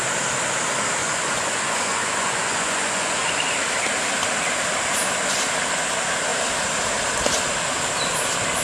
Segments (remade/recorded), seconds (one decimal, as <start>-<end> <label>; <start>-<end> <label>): 0.0-1.0 recorded; 1.0-3.3 remade; 3.3-8.6 recorded